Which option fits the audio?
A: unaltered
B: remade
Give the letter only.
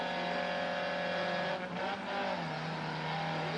A